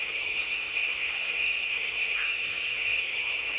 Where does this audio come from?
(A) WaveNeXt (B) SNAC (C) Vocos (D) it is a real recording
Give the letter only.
B